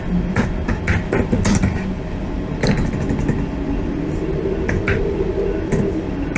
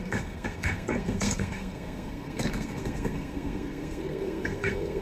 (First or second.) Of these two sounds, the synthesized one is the second